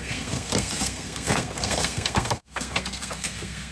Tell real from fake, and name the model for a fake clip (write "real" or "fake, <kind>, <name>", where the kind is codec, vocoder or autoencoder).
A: fake, codec, SNAC